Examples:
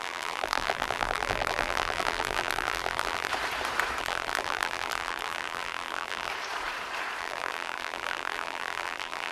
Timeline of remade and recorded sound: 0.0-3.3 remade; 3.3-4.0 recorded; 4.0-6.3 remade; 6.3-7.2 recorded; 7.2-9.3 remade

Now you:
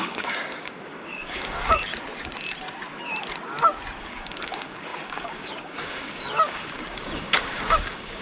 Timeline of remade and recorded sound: 0.0-1.9 remade; 1.9-4.0 recorded; 4.0-8.2 remade

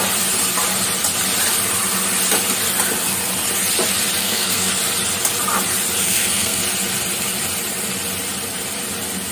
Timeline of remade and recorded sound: 0.0-4.2 recorded; 4.2-4.7 remade; 4.7-6.0 recorded; 6.0-6.6 remade; 6.6-9.3 recorded

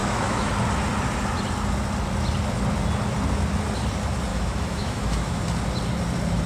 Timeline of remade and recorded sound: 0.0-0.5 remade; 0.5-4.3 recorded; 4.3-5.4 remade; 5.4-6.5 recorded

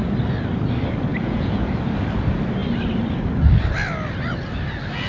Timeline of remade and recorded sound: 0.0-1.1 recorded; 1.1-1.7 remade; 1.7-5.1 recorded

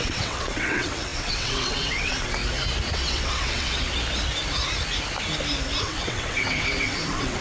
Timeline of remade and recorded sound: 0.0-2.4 remade; 2.4-2.9 recorded; 2.9-3.9 remade; 3.9-5.8 recorded; 5.8-7.4 remade

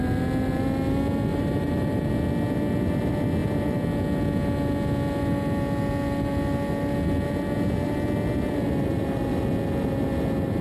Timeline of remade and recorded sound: 0.0-1.3 recorded; 1.3-2.1 remade; 2.1-10.6 recorded